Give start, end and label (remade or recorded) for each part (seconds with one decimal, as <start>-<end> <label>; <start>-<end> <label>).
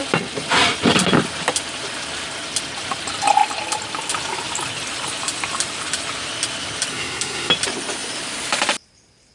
0.0-6.9 recorded; 6.9-7.5 remade; 7.5-9.3 recorded